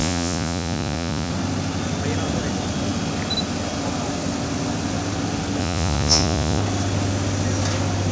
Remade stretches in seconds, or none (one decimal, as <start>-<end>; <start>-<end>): 0.0-1.3; 5.6-6.6